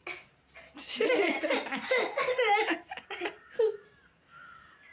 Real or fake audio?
real